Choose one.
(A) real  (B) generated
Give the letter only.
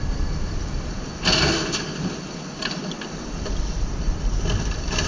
A